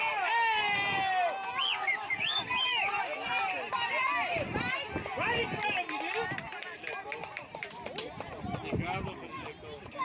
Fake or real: real